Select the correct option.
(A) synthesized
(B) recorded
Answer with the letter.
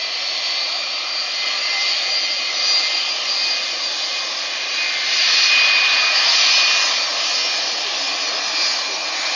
B